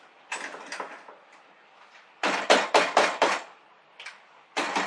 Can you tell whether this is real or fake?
fake